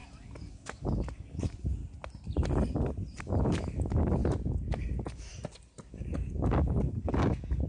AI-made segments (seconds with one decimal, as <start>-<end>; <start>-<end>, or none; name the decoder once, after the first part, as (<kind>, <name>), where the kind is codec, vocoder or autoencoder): 0.0-1.8 (codec, DAC); 3.2-4.2; 4.8-5.3; 5.9-7.7